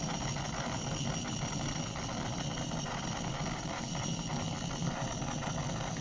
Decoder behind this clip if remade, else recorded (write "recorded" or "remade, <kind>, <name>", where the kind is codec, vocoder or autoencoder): recorded